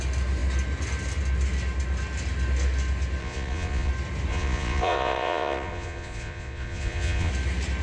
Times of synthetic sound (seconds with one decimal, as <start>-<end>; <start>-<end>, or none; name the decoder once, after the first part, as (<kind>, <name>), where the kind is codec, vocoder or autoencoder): 3.2-3.9 (vocoder, Vocos); 4.3-7.3